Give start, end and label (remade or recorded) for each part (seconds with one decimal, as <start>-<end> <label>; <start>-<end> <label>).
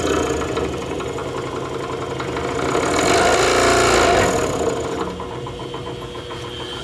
0.0-6.8 recorded